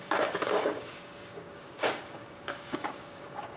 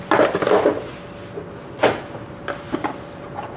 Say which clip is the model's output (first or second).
first